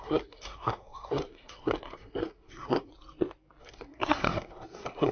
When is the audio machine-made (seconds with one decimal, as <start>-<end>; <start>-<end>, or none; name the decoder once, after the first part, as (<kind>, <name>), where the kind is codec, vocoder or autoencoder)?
0.0-2.9 (codec, SNAC); 3.6-5.1